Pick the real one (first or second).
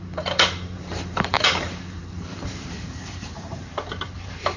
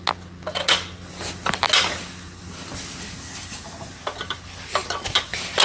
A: second